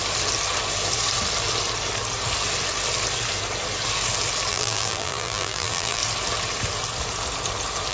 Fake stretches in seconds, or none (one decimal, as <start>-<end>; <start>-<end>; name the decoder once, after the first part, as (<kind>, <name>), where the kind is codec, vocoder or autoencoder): 4.5-6.0 (vocoder, BigVGAN v2)